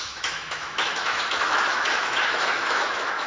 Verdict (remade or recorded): remade